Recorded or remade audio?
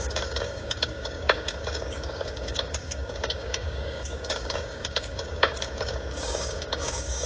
remade